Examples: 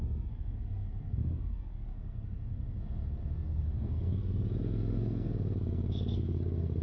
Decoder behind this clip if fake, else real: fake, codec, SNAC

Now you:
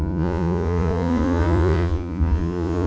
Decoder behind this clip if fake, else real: fake, vocoder, Vocos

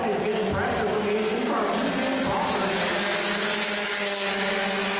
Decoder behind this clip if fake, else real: real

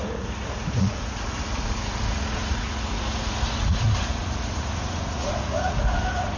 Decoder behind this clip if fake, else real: fake, vocoder, Vocos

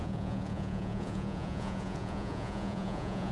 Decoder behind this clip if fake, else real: fake, vocoder, Vocos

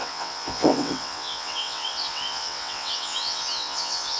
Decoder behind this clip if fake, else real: fake, vocoder, WaveNeXt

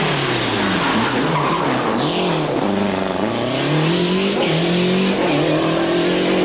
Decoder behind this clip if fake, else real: real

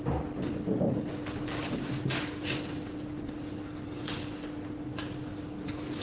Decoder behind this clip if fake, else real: real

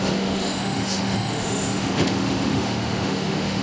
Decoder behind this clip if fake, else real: fake, autoencoder, DAC-VAE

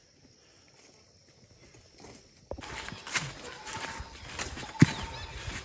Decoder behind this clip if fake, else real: real